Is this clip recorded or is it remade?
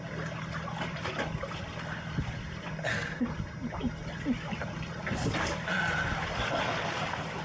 recorded